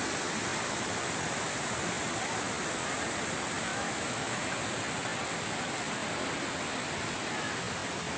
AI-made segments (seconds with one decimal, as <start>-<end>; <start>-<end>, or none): 3.7-4.4